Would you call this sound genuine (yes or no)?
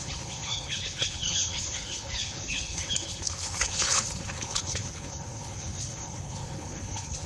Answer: no